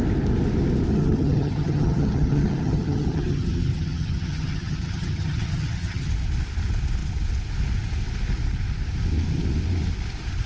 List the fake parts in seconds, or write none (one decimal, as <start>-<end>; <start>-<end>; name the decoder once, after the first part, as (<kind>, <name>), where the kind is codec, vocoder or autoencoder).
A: 0.9-6.1 (vocoder, HiFi-GAN)